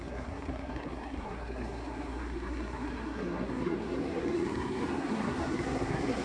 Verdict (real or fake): fake